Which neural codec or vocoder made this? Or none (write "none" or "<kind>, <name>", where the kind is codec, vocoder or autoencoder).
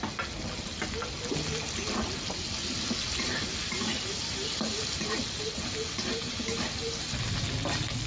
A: none